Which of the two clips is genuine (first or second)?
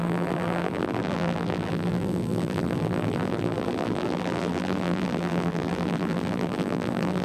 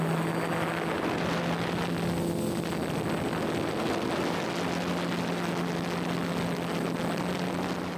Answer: second